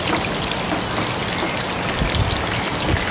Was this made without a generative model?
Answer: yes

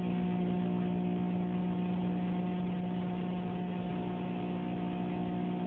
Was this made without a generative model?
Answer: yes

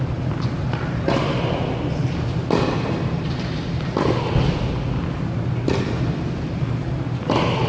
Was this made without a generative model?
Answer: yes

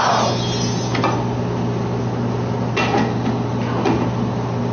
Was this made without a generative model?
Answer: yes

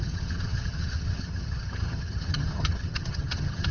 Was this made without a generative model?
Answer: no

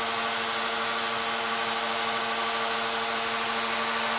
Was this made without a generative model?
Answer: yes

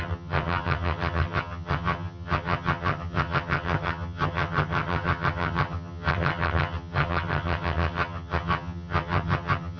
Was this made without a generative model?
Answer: no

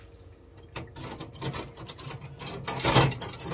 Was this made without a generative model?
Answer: yes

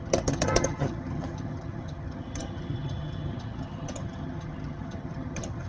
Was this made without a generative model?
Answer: no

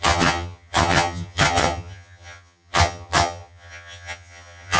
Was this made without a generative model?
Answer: no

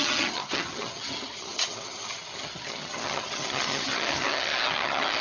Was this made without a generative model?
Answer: no